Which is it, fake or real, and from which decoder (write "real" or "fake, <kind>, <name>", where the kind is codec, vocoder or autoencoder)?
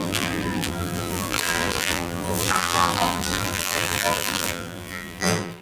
fake, vocoder, BigVGAN v2